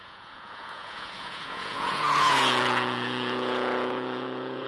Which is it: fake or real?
fake